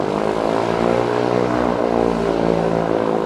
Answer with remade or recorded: recorded